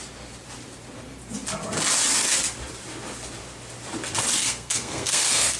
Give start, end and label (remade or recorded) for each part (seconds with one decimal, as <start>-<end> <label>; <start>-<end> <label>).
0.0-4.4 recorded; 4.4-5.6 remade